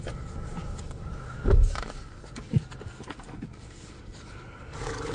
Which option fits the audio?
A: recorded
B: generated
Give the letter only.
B